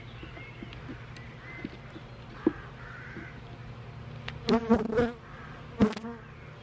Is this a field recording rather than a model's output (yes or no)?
yes